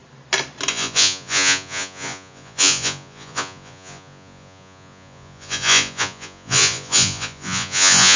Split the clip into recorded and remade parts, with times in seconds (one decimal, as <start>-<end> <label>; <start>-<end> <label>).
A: 0.0-0.7 recorded; 0.7-8.2 remade